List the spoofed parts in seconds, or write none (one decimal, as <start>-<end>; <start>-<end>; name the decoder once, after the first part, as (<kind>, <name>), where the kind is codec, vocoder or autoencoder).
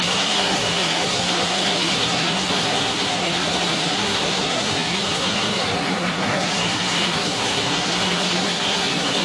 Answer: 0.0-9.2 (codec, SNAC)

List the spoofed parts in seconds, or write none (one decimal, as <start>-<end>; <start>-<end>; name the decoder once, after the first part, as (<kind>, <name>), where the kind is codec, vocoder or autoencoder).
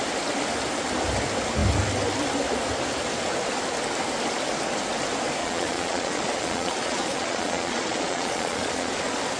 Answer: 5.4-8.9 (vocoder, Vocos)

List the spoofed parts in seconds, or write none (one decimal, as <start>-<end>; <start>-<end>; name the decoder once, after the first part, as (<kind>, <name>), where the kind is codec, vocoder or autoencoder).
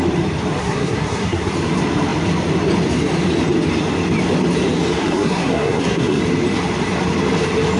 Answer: 0.6-1.5 (codec, SNAC); 5.0-6.2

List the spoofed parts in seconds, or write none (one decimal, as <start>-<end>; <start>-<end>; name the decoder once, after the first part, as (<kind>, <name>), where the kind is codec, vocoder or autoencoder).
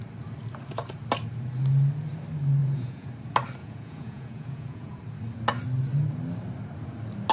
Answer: 2.6-3.1 (vocoder, Vocos); 3.6-5.0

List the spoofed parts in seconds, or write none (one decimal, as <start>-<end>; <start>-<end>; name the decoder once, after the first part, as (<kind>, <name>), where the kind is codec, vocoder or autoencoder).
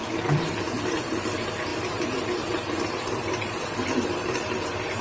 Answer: 1.0-5.0 (vocoder, BigVGAN v2)